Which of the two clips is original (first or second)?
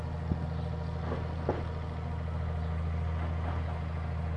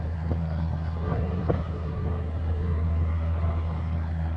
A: first